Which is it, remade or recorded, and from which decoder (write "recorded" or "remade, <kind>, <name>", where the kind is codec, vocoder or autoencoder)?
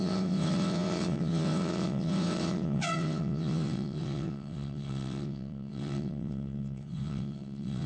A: remade, vocoder, WaveNeXt